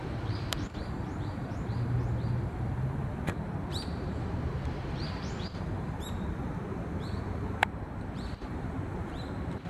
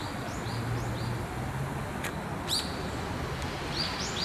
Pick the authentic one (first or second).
second